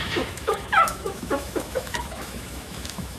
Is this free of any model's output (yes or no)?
no